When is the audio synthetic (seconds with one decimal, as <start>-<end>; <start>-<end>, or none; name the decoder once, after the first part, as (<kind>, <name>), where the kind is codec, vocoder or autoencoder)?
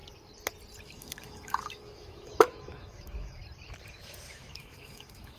0.8-3.4 (autoencoder, DAC-VAE); 4.3-5.4